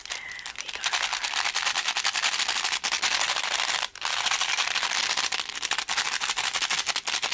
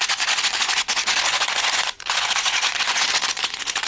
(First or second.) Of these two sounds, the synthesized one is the second